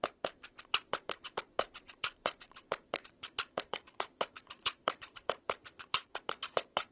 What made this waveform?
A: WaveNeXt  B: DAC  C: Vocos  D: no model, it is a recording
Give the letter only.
C